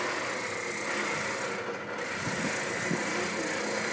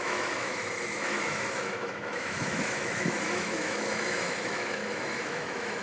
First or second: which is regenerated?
second